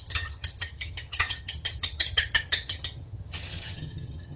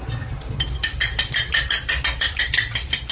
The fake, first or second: first